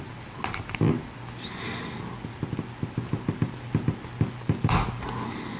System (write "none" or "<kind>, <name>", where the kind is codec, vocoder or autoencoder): none